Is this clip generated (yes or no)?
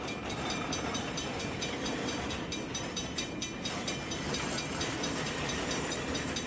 yes